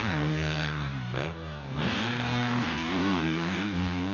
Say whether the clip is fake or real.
fake